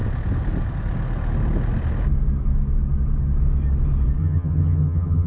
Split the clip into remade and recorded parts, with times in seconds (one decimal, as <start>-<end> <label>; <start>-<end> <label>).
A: 0.0-4.2 recorded; 4.2-5.3 remade